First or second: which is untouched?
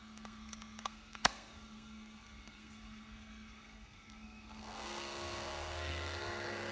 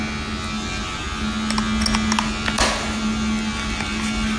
second